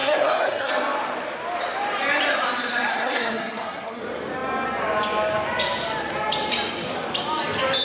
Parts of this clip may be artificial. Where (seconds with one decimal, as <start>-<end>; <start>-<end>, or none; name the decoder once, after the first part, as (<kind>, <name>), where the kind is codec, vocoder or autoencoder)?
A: 0.0-0.7 (codec, SNAC); 2.9-4.0